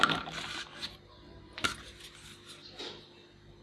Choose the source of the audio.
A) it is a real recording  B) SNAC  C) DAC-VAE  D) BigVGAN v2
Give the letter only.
A